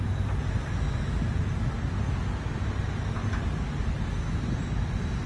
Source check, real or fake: real